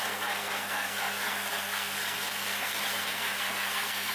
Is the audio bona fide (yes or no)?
no